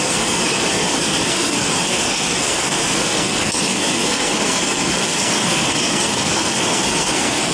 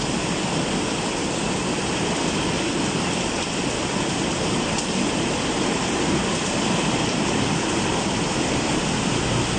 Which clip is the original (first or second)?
second